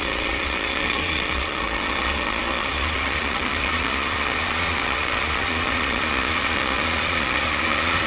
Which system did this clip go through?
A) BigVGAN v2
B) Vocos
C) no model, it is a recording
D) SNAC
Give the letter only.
B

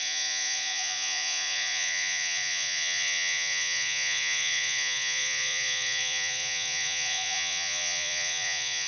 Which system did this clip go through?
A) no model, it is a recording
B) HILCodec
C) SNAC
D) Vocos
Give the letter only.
D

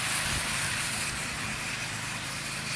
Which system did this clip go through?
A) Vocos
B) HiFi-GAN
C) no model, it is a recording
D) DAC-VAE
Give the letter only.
C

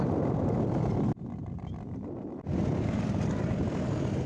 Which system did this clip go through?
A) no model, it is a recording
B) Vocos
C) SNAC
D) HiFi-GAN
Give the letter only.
A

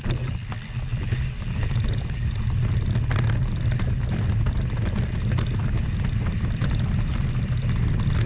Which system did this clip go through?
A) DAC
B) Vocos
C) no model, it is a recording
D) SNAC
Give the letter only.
C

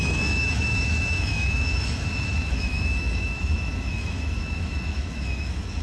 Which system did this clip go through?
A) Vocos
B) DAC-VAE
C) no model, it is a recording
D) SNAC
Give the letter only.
B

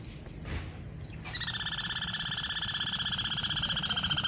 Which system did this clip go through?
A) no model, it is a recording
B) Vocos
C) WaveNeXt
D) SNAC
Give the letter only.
A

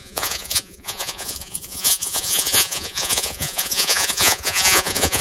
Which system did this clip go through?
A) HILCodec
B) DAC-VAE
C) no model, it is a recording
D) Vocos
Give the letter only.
D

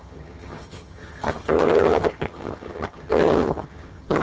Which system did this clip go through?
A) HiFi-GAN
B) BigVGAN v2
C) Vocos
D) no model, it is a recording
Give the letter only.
A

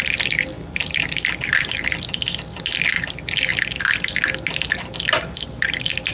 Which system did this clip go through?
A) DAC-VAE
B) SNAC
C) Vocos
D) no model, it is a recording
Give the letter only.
D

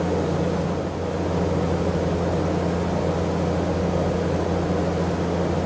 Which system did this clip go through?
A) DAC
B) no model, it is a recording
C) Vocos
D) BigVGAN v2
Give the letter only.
B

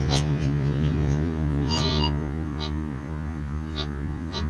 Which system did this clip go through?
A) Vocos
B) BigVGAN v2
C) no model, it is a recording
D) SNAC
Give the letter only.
A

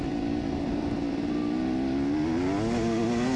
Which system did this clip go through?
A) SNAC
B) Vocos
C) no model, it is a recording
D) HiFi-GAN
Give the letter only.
C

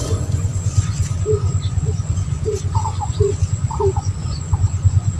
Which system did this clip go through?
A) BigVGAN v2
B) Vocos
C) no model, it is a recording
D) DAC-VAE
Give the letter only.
B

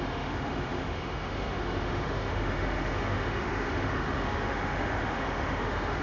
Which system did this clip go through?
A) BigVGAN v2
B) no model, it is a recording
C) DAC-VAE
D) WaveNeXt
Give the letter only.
C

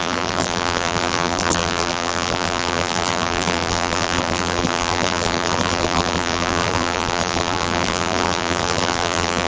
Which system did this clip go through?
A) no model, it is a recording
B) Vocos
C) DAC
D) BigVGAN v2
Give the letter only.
D